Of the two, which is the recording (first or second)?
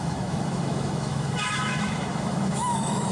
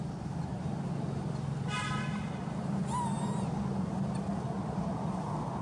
second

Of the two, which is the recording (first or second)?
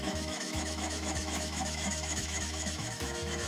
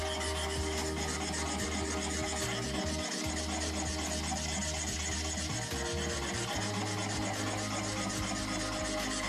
second